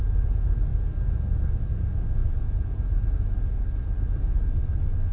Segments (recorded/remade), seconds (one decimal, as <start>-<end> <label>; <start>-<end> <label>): 0.0-5.1 recorded